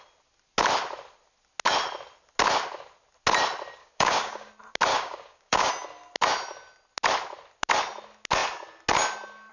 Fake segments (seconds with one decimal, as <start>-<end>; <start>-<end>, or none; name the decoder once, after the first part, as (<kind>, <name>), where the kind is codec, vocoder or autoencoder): 3.8-4.5 (codec, DAC); 4.9-5.7